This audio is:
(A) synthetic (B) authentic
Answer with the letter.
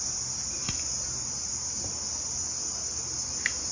B